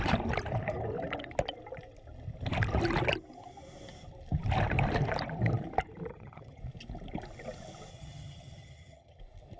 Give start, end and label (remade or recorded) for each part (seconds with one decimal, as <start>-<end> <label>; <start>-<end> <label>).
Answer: 0.0-6.1 recorded; 6.1-6.6 remade; 6.6-7.9 recorded; 7.9-9.2 remade; 9.2-9.6 recorded